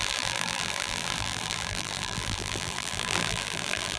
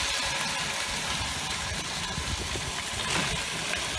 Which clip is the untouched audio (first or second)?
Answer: second